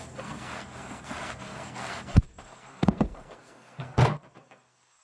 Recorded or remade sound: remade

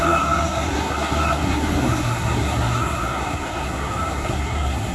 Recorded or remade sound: remade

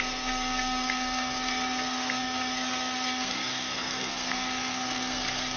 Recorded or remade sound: remade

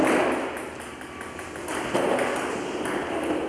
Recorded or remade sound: recorded